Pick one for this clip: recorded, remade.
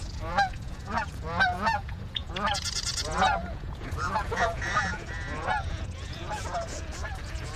remade